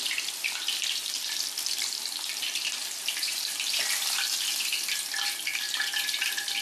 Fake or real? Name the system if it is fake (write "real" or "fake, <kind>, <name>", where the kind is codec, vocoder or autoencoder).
fake, vocoder, BigVGAN v2